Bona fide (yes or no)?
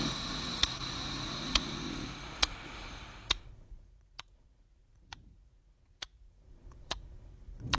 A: no